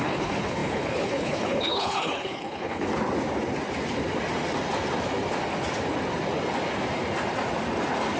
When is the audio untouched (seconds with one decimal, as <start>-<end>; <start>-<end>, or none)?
2.9-8.2